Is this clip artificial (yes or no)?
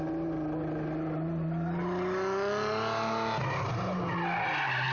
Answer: no